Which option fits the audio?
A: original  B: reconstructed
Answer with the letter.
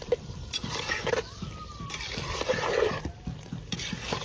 B